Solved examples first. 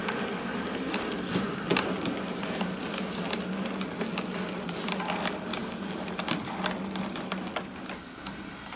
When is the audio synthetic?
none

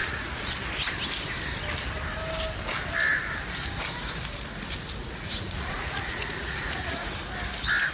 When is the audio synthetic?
0.0-0.5; 5.0-7.1

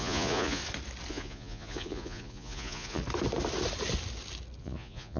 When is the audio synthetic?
0.0-0.6; 1.1-3.0; 4.6-5.2

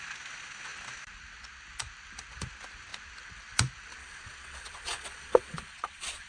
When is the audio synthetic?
4.0-6.3

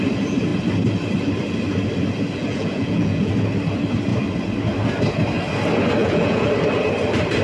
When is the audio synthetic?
2.4-3.3; 6.0-6.5